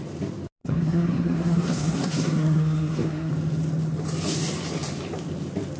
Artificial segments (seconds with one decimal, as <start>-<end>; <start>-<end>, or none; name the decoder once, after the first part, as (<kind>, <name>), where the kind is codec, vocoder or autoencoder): 0.6-3.3 (codec, SNAC)